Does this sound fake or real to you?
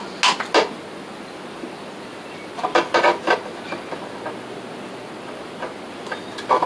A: real